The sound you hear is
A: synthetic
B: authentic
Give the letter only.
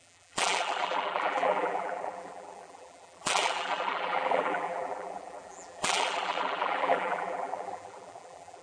A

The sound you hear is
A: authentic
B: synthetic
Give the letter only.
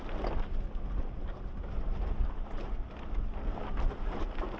A